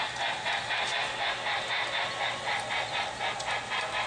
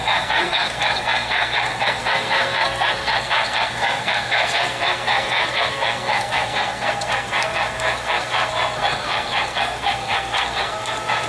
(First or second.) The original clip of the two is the first